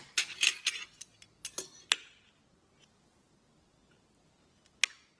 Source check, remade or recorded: recorded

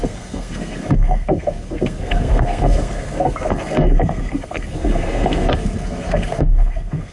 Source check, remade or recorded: remade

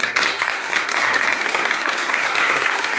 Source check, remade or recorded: remade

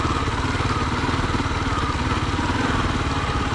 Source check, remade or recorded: recorded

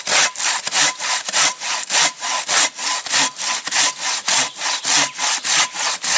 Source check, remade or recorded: recorded